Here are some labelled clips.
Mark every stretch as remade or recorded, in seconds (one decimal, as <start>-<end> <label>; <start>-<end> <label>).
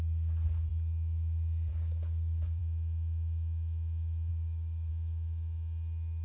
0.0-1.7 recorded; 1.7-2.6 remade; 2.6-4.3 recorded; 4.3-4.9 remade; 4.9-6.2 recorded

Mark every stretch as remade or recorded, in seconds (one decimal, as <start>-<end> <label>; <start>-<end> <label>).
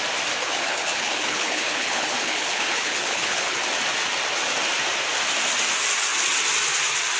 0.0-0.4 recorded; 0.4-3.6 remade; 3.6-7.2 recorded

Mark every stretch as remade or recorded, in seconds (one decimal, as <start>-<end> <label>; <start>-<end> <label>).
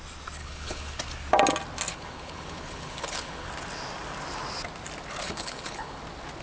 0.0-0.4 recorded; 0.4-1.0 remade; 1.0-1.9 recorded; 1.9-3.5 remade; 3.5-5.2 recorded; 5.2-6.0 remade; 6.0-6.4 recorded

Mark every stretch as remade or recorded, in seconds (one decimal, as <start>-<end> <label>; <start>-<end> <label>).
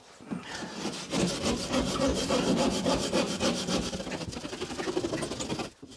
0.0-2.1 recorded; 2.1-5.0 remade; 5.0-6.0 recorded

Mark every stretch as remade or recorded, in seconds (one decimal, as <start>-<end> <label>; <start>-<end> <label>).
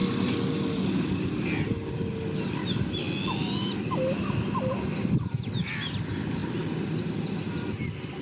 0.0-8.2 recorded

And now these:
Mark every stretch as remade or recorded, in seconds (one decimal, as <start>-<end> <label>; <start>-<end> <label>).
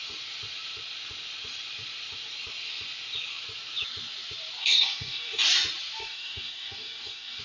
0.0-4.6 recorded; 4.6-5.4 remade; 5.4-6.0 recorded; 6.0-7.4 remade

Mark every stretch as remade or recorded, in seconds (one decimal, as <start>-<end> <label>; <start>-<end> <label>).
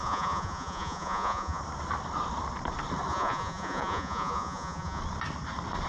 0.0-1.6 remade; 1.6-3.1 recorded; 3.1-5.0 remade; 5.0-5.9 recorded